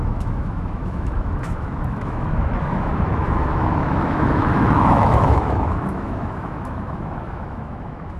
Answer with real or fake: fake